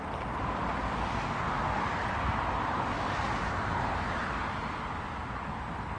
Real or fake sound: real